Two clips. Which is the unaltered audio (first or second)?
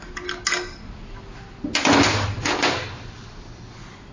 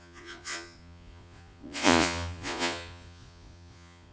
first